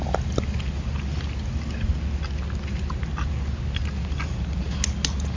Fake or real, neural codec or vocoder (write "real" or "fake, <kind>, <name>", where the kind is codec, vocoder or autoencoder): real